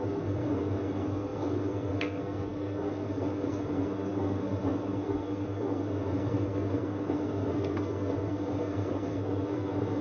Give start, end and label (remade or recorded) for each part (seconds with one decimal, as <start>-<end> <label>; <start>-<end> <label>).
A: 0.0-10.0 remade